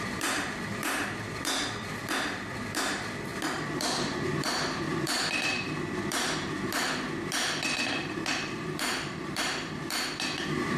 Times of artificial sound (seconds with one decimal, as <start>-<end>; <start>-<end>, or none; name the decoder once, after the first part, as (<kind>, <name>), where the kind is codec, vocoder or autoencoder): 0.0-10.8 (vocoder, BigVGAN v2)